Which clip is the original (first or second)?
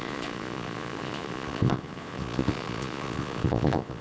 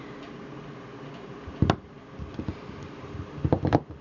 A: second